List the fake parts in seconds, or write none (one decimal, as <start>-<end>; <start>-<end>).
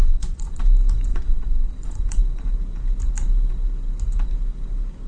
0.0-0.6; 1.1-2.2